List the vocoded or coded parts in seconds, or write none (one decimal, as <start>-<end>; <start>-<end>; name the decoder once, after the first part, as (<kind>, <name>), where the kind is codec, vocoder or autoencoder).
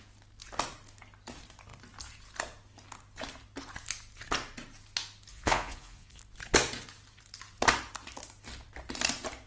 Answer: 5.3-6.2 (vocoder, Vocos)